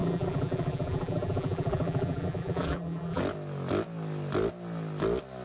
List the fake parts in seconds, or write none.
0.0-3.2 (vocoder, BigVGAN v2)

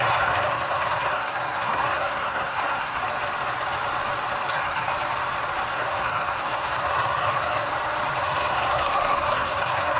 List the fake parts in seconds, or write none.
0.0-3.0 (codec, SNAC); 4.5-4.9; 5.7-7.7; 8.2-10.0